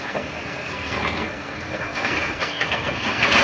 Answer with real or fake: fake